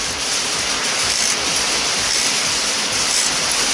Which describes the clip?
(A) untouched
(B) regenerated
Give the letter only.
A